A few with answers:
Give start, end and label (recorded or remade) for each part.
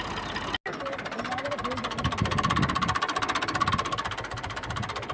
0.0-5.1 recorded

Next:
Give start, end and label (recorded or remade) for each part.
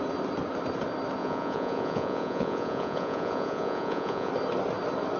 0.0-1.2 recorded; 1.2-4.3 remade; 4.3-5.2 recorded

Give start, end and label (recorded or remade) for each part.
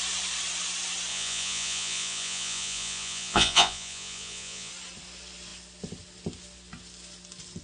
0.0-1.1 recorded; 1.1-4.7 remade; 4.7-7.6 recorded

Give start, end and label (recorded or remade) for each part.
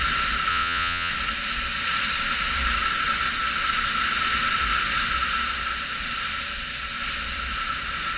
0.0-0.5 recorded; 0.5-1.1 remade; 1.1-8.2 recorded